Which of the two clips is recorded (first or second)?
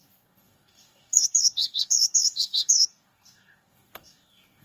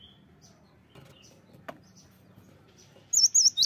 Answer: second